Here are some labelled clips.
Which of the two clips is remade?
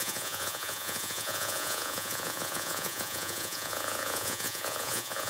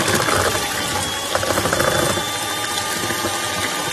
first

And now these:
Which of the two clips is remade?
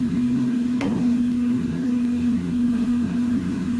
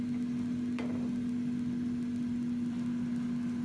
first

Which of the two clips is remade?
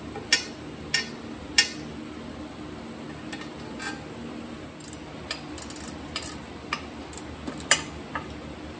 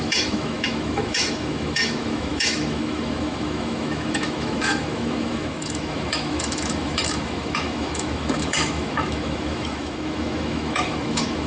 second